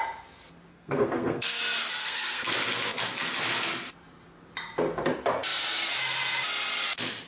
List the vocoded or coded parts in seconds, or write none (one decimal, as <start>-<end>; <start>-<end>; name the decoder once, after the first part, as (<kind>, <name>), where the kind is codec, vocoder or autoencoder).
0.7-1.6 (codec, SNAC); 2.0-2.5